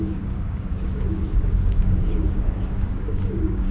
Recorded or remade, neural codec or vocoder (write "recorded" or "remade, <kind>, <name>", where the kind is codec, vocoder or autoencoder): remade, codec, DAC